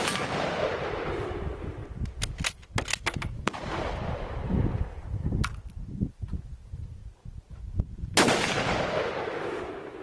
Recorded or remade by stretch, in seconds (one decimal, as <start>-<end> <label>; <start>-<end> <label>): 0.0-1.8 remade; 1.8-3.3 recorded; 3.3-5.4 remade; 5.4-6.1 recorded; 6.1-7.0 remade; 7.0-8.9 recorded; 8.9-10.0 remade